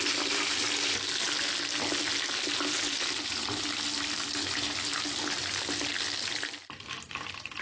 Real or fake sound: real